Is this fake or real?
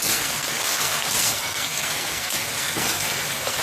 fake